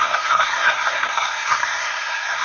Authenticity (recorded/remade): remade